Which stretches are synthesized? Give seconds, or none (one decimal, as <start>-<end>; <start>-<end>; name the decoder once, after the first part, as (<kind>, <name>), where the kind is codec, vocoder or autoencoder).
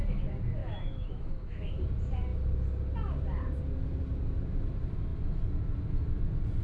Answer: 0.6-1.8 (autoencoder, DAC-VAE)